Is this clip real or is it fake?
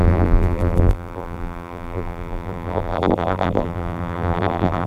fake